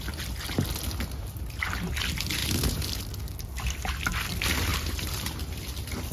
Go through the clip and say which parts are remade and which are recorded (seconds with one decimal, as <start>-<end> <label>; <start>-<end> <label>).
0.0-2.4 recorded; 2.4-3.0 remade; 3.0-4.7 recorded; 4.7-5.4 remade; 5.4-6.1 recorded